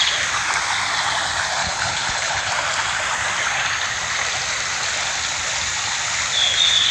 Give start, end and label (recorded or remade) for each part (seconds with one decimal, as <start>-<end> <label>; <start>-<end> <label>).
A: 0.0-1.6 recorded; 1.6-2.5 remade; 2.5-6.9 recorded